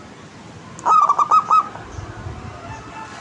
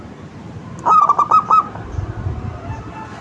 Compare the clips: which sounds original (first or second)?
first